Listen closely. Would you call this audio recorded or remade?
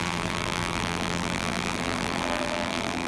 remade